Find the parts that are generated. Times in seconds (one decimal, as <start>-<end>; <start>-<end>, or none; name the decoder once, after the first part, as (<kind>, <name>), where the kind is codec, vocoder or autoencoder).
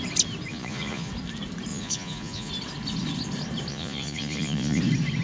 0.5-1.1 (vocoder, Vocos); 1.7-2.5; 3.7-4.8